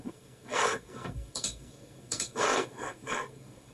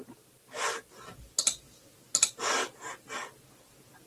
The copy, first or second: first